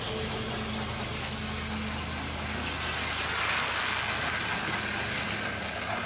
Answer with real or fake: real